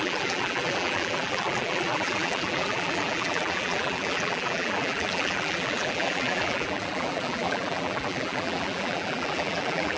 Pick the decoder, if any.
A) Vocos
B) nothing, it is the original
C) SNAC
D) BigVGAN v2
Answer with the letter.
D